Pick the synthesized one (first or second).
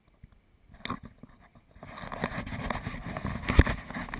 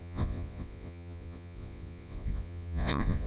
second